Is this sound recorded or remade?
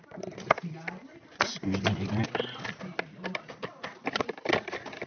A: recorded